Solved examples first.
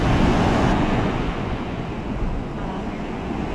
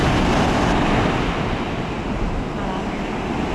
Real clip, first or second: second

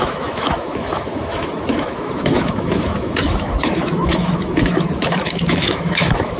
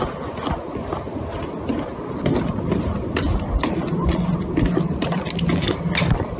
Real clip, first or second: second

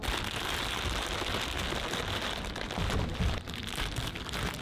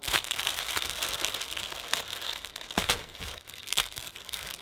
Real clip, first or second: first